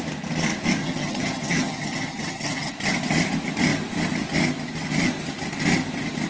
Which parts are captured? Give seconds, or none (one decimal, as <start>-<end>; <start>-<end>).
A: 0.0-0.8; 2.7-6.3